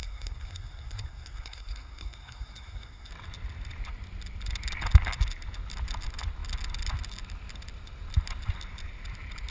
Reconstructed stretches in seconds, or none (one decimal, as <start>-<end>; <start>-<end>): 0.0-3.1